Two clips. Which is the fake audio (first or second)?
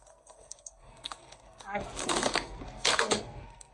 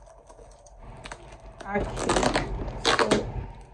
first